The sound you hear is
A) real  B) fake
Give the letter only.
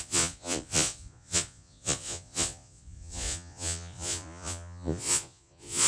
B